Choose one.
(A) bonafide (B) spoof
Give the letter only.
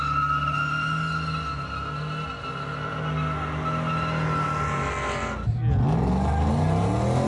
A